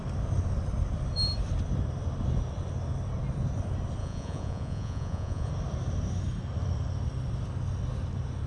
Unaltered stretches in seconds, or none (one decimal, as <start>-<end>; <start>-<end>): 0.0-4.0; 5.5-8.5